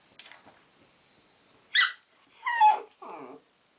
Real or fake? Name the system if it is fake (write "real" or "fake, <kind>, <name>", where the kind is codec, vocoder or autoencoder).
real